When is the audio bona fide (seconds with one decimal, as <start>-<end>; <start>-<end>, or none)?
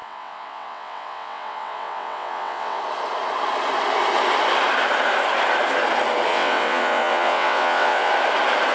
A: 2.8-6.3; 8.1-8.7